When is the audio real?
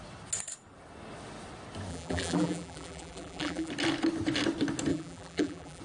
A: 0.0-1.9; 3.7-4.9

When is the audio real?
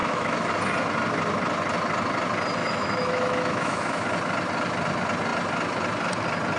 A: 0.5-2.6; 4.0-6.6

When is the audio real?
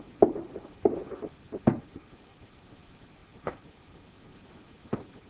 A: 1.0-1.7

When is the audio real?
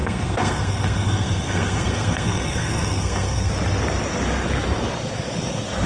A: 3.5-5.9